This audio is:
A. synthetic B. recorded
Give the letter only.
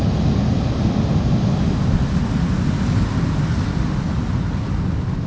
B